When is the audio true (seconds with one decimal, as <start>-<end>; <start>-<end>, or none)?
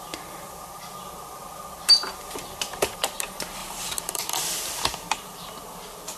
0.0-3.6; 4.3-6.2